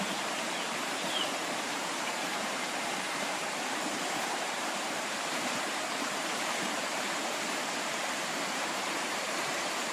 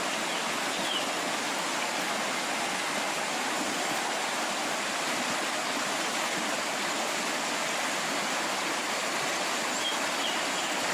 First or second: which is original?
second